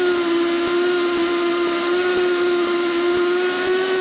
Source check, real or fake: real